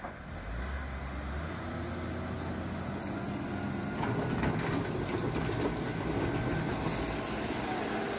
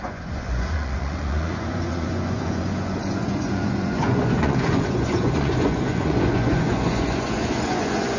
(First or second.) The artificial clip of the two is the second